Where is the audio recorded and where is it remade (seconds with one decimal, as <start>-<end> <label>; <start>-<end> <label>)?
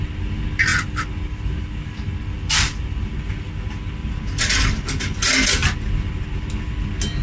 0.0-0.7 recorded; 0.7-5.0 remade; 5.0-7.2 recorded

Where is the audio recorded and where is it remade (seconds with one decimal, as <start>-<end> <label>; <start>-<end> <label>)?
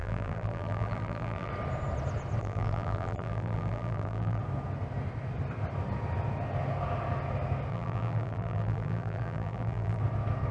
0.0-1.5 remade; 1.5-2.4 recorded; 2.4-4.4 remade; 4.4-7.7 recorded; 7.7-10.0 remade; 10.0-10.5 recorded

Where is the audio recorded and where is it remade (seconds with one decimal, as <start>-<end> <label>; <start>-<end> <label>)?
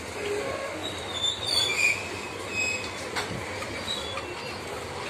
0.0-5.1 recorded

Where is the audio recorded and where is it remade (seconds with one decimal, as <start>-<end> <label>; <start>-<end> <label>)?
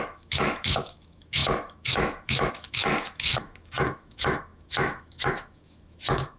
0.0-6.4 remade